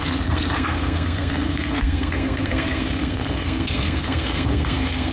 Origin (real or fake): fake